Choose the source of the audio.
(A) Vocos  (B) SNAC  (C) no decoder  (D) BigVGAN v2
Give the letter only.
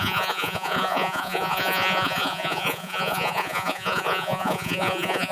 A